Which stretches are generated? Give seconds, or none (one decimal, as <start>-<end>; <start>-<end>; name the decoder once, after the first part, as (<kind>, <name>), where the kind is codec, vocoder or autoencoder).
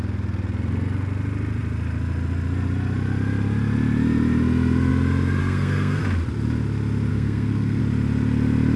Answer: 5.4-6.0 (codec, SNAC); 7.1-7.8